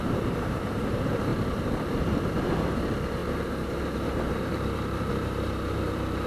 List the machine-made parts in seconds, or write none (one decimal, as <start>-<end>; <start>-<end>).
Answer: 0.0-1.3; 2.4-6.3